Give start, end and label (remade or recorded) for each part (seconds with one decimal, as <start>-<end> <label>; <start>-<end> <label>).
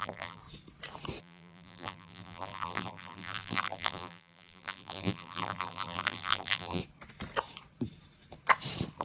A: 0.0-0.4 remade; 0.4-1.2 recorded; 1.2-6.8 remade; 6.8-9.0 recorded